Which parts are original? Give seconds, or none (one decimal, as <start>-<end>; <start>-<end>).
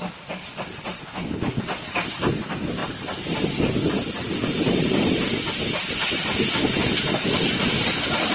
0.0-1.0; 1.6-8.3